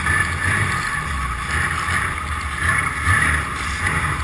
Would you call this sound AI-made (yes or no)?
no